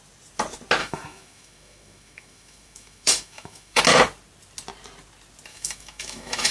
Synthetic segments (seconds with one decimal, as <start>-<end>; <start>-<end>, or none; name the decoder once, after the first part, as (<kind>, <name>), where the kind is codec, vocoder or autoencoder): 0.8-3.8 (autoencoder, DAC-VAE); 5.5-6.5